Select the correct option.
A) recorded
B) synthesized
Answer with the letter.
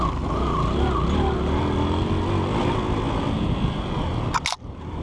A